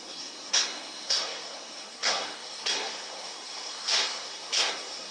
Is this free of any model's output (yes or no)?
no